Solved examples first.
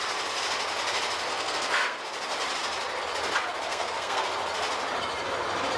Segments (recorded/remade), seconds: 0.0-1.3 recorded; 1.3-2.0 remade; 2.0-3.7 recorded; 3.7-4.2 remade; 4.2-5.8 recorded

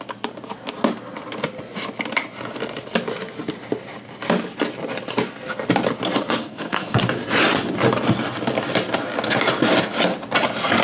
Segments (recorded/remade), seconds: 0.0-6.4 recorded; 6.4-7.0 remade; 7.0-10.8 recorded

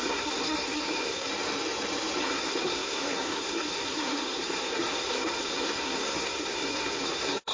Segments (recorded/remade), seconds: 0.0-1.3 remade; 1.3-2.2 recorded; 2.2-7.5 remade

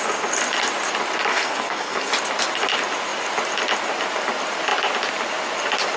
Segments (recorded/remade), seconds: 0.0-1.3 recorded; 1.3-2.1 remade; 2.1-6.0 recorded

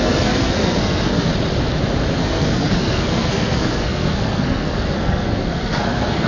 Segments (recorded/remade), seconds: 0.0-1.3 remade; 1.3-2.2 recorded; 2.2-6.3 remade

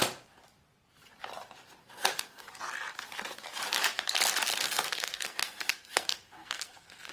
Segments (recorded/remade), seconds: 0.0-1.8 recorded; 1.8-2.5 remade; 2.5-4.5 recorded; 4.5-7.1 remade